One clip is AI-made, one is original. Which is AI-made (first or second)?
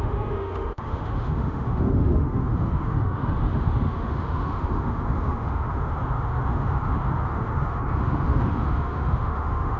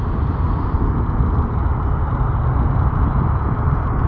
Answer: first